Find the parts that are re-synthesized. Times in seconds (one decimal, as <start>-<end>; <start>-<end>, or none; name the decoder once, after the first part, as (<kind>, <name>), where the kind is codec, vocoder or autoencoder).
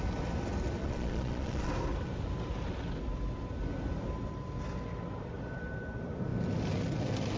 0.8-1.7 (vocoder, Vocos)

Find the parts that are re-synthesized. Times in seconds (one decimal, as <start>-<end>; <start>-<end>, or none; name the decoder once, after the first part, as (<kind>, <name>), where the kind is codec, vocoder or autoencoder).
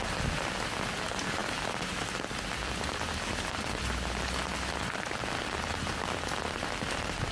none